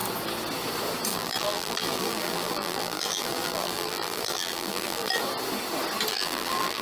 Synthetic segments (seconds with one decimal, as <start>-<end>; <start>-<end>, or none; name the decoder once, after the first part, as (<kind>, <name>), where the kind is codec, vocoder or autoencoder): 1.1-5.2 (vocoder, BigVGAN v2); 6.1-6.8